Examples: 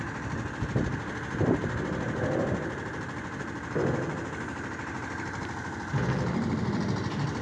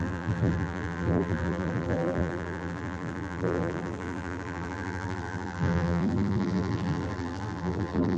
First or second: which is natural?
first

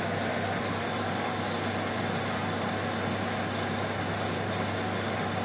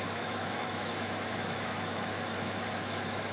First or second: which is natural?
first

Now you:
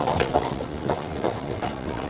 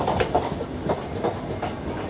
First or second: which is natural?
second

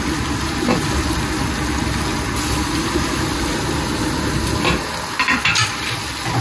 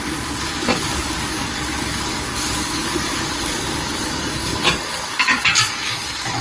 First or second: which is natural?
first